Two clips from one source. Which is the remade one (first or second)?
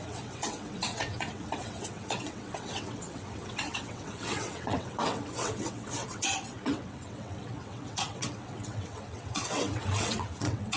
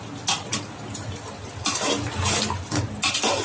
first